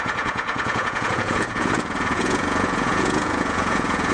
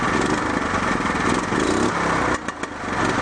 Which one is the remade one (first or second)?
first